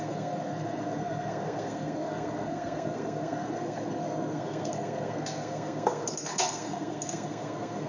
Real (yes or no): no